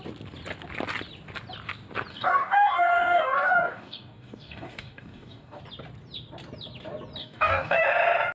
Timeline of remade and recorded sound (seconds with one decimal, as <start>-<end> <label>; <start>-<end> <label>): 0.0-2.1 recorded; 2.1-5.6 remade; 5.6-7.2 recorded; 7.2-7.8 remade; 7.8-8.3 recorded